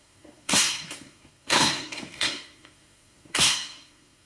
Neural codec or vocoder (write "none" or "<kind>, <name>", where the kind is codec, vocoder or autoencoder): codec, SNAC